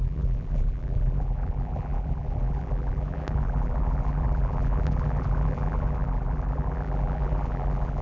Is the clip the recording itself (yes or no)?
no